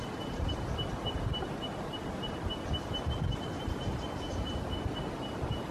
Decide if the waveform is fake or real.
real